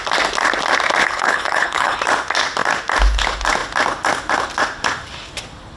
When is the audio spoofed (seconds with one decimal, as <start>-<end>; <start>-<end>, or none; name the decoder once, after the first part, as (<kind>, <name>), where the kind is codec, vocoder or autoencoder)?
1.0-2.0 (codec, HILCodec)